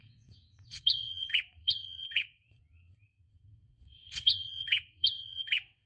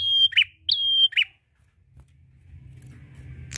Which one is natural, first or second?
second